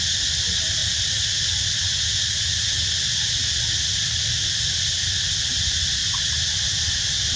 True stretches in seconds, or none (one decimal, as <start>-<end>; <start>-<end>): 0.0-6.0

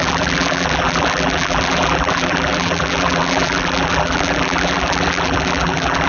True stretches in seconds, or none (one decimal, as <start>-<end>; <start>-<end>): none

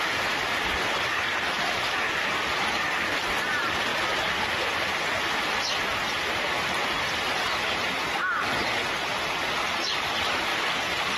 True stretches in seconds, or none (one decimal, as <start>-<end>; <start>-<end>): 0.0-11.2

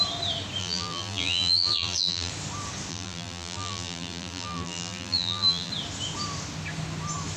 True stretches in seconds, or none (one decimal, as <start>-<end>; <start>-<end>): 0.0-0.6; 2.3-2.9; 5.7-7.4

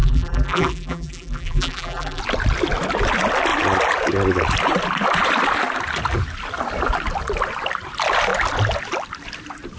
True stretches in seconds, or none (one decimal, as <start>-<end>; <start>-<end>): 2.2-9.8

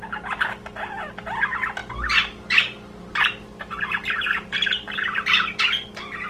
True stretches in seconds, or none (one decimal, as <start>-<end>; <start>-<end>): 0.0-1.8; 5.6-6.3

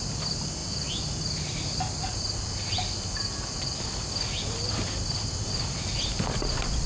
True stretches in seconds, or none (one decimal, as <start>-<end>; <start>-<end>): none

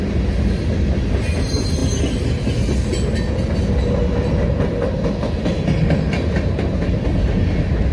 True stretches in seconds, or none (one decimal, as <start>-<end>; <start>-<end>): 0.0-7.9